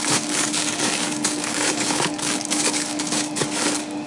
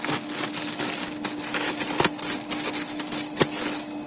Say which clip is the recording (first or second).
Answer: second